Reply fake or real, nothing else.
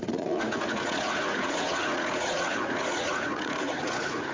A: fake